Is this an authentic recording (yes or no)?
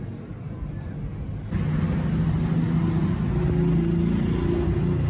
yes